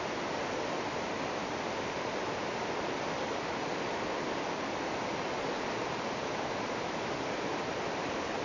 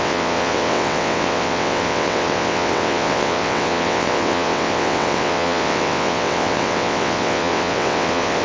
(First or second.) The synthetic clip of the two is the second